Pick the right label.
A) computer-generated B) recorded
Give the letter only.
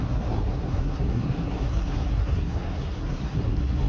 A